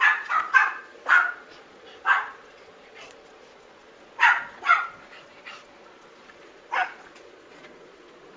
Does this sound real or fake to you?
fake